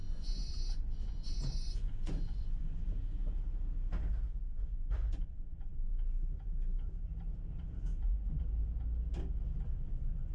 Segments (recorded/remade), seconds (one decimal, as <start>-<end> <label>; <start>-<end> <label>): 0.0-2.8 remade; 2.8-4.5 recorded; 4.5-5.9 remade; 5.9-7.9 recorded; 7.9-8.4 remade; 8.4-10.3 recorded